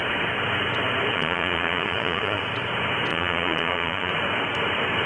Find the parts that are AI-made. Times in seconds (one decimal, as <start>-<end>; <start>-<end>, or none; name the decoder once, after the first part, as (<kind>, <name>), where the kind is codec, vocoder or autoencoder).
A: 1.1-2.4 (vocoder, Vocos); 3.1-4.1